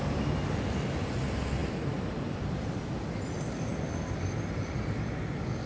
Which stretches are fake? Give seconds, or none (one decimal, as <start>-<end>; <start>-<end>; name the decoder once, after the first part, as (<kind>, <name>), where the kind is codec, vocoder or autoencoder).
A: none